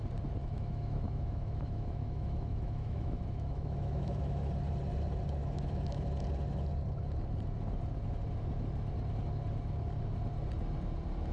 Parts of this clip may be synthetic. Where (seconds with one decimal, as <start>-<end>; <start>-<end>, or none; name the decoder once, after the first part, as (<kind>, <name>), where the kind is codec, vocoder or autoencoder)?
0.4-4.5 (autoencoder, DAC-VAE); 5.4-6.0